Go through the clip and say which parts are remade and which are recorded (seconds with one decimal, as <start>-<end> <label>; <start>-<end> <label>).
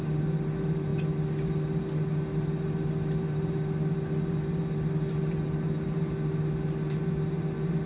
0.0-7.9 recorded